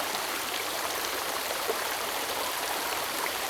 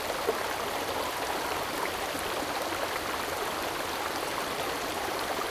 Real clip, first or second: second